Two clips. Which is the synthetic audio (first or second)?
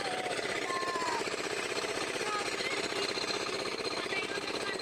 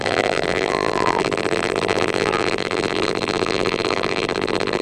second